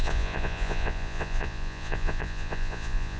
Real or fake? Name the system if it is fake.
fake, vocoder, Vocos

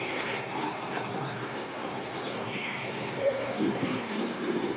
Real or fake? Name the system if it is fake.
fake, codec, SNAC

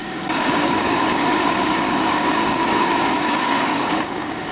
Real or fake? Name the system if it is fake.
fake, codec, DAC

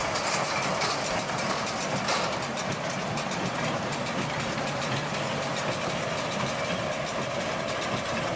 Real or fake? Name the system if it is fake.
real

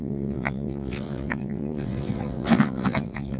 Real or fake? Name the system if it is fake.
fake, vocoder, WaveNeXt